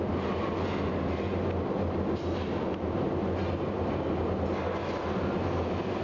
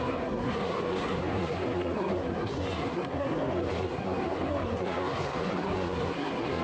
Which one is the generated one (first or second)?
second